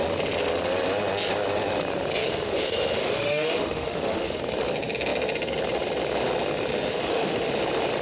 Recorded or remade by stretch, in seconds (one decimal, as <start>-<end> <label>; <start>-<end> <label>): 0.0-2.2 recorded; 2.2-4.4 remade; 4.4-6.9 recorded; 6.9-7.5 remade; 7.5-8.0 recorded